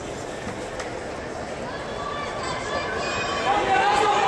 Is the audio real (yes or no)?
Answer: no